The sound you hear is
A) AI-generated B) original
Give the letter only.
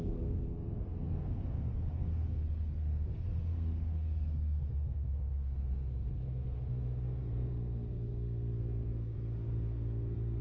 A